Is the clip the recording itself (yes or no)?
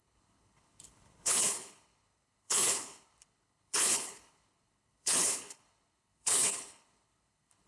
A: no